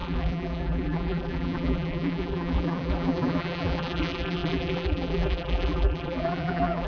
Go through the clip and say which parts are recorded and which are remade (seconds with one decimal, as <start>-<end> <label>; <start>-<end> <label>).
0.0-6.9 remade